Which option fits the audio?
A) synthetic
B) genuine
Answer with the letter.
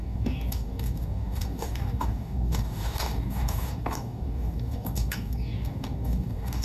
A